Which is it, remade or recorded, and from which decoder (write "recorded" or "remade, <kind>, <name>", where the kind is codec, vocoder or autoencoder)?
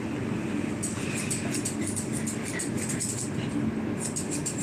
recorded